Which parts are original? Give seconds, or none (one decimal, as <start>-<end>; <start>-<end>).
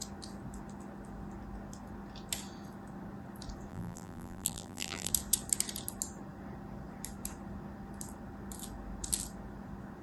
0.0-3.7; 5.1-10.0